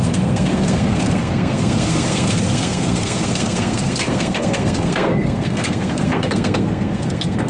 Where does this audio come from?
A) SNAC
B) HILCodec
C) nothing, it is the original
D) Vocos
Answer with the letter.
A